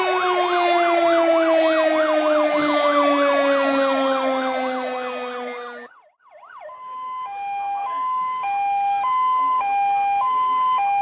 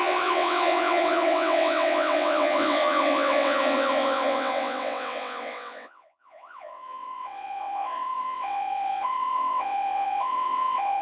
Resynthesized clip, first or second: second